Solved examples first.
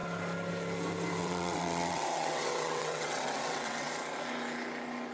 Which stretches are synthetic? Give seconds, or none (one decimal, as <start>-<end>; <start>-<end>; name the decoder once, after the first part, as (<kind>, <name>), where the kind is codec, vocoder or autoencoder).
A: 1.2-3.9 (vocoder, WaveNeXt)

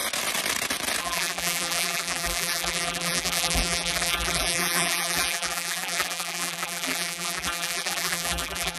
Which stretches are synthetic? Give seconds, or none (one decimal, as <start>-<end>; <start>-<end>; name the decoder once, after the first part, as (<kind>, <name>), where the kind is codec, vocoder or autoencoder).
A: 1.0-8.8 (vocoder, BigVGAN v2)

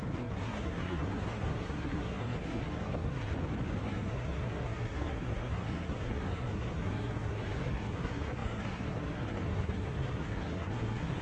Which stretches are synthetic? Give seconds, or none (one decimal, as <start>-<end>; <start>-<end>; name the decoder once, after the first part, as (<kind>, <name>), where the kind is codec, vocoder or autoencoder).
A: 0.0-3.3 (codec, SNAC); 3.8-11.2

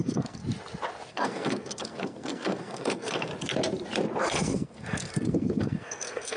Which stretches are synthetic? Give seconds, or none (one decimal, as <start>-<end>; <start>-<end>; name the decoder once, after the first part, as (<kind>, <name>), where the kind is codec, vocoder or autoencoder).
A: 0.0-0.4 (codec, SNAC); 1.1-3.3; 4.2-6.4

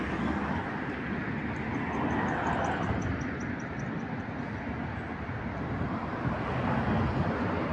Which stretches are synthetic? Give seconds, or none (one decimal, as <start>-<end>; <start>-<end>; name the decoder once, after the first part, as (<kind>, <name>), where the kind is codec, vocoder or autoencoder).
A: none

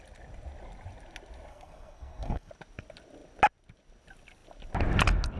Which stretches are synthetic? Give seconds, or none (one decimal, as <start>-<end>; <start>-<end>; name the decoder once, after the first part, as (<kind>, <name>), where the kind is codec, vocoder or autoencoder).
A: 1.5-2.5 (codec, SNAC)